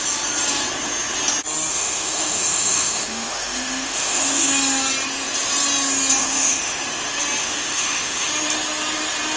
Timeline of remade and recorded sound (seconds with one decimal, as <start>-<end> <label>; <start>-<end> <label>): 0.0-1.7 recorded; 1.7-4.5 remade; 4.5-6.2 recorded; 6.2-6.8 remade; 6.8-7.4 recorded; 7.4-8.3 remade; 8.3-9.4 recorded